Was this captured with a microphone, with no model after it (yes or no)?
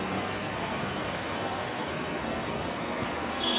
no